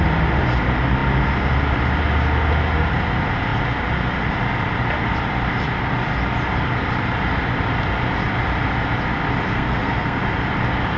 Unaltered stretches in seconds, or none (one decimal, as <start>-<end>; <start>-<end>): 0.0-9.5; 10.2-11.0